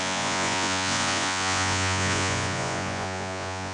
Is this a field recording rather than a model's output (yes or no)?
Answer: no